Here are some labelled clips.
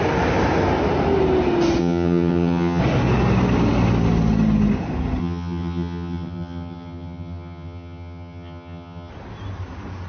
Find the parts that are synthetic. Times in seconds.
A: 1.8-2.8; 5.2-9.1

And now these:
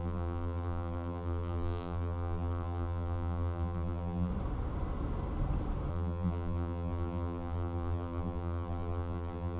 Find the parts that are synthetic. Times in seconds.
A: 0.0-4.3; 5.9-9.6

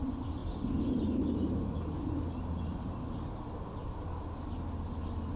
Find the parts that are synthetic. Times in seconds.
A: none

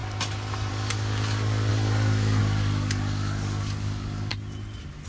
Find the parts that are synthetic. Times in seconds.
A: 0.7-4.3

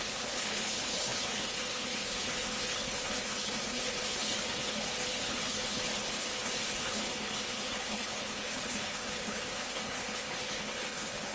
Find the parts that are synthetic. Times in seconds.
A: 0.0-11.3

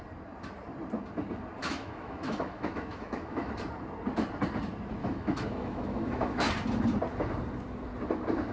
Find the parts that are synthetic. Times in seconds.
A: 1.6-3.5; 5.0-6.5